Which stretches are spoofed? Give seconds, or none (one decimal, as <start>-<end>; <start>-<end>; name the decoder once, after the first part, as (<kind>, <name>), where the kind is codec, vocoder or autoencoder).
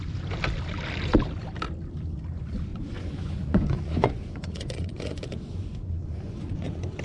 2.7-7.0 (vocoder, Vocos)